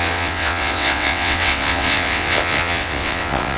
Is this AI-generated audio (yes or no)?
yes